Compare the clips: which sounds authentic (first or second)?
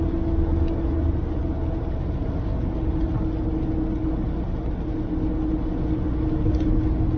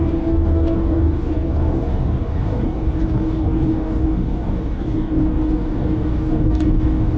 first